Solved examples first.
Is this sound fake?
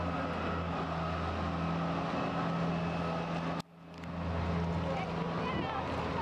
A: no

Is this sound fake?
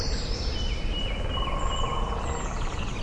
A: no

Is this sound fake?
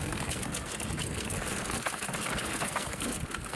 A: yes